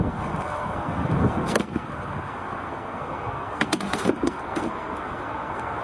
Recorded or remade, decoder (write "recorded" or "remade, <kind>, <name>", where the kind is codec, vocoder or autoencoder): remade, codec, SNAC